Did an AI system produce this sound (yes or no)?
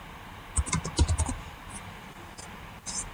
yes